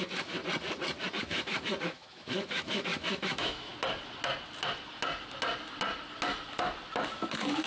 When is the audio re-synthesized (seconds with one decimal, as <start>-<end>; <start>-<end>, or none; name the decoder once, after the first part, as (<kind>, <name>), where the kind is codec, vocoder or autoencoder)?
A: 0.0-0.4 (autoencoder, DAC-VAE); 1.2-3.7; 7.1-7.7